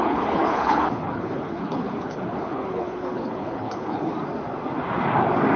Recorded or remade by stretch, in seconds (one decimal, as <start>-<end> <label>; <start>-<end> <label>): 0.0-4.1 remade; 4.1-5.6 recorded